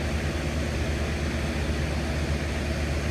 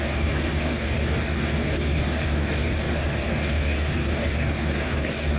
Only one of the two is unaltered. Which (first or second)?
first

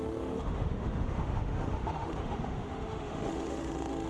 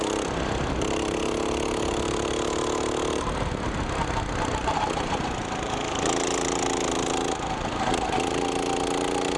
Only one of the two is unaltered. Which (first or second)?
second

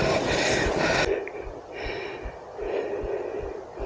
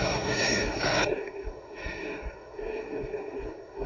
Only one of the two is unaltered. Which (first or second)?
first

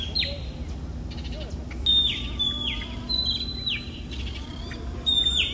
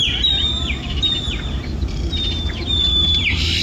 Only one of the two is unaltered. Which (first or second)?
first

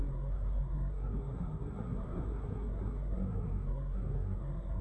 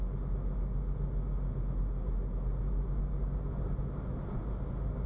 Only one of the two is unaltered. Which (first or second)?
second